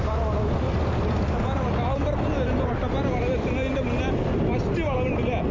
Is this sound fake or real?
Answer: real